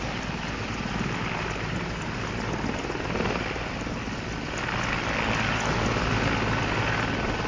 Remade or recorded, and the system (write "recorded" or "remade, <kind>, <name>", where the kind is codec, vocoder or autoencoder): recorded